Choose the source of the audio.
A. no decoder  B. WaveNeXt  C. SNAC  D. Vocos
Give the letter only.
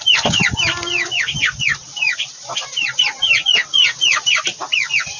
A